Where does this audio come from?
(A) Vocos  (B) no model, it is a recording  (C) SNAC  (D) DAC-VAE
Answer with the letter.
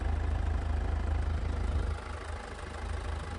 B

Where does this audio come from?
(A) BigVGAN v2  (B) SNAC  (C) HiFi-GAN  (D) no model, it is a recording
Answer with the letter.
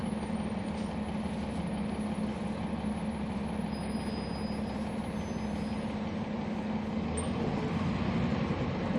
D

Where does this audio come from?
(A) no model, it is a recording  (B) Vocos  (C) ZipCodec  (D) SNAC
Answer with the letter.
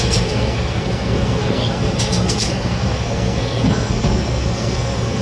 D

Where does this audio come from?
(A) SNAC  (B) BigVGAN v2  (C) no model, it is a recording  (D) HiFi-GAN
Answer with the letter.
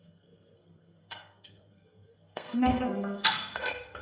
A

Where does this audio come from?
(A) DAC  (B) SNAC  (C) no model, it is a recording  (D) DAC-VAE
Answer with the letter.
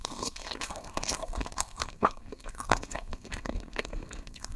B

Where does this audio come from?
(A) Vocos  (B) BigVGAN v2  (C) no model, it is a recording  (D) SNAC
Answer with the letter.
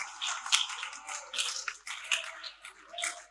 C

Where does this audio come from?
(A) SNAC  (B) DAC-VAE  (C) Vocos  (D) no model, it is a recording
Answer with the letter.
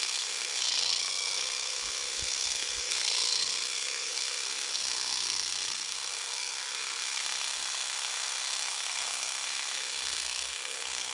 A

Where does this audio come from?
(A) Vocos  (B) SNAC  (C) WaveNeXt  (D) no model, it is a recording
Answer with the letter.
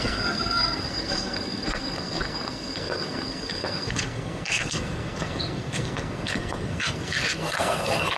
B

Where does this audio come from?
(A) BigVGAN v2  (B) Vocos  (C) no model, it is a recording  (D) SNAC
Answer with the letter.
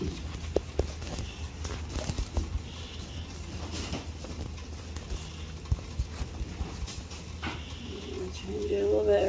C